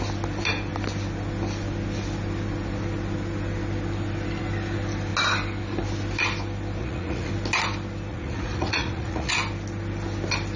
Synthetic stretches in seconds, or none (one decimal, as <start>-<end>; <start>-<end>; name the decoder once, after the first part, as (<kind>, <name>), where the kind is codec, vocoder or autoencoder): 6.8-7.3 (vocoder, Vocos); 8.1-9.3